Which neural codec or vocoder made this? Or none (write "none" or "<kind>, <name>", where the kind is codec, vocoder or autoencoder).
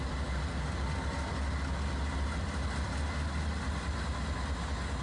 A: none